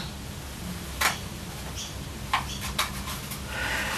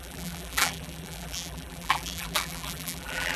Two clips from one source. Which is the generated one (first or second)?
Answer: second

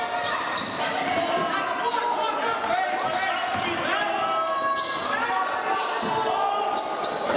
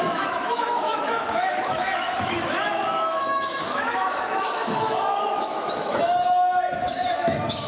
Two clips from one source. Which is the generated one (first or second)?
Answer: second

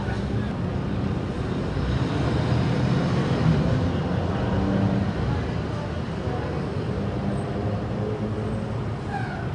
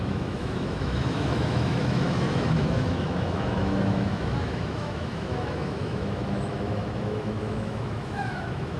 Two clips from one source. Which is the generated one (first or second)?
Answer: second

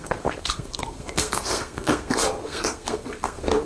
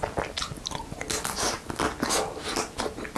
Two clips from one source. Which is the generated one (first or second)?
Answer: first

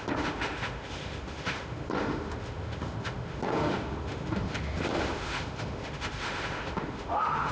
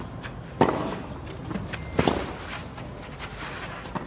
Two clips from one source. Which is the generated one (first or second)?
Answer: first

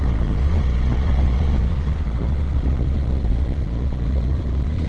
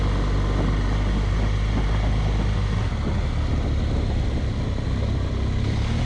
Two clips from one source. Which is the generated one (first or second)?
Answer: first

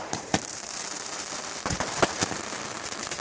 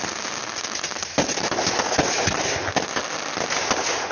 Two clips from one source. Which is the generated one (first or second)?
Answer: first